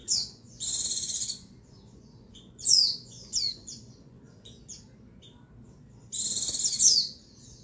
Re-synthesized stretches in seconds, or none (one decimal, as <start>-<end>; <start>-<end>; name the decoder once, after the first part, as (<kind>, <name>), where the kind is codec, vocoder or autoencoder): 0.0-4.6 (vocoder, Vocos)